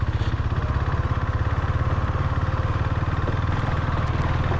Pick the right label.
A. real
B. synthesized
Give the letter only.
A